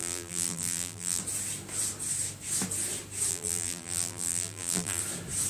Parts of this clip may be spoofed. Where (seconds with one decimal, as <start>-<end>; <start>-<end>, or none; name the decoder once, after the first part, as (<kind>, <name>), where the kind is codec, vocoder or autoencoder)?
0.0-1.2 (vocoder, BigVGAN v2); 3.3-5.0